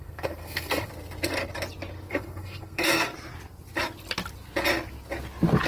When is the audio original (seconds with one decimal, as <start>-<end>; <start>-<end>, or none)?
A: 0.9-2.1; 3.1-5.7